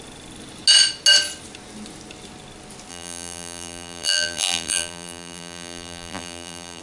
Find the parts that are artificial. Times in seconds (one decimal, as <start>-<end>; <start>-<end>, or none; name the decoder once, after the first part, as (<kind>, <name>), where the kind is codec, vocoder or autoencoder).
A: 2.9-6.8 (vocoder, BigVGAN v2)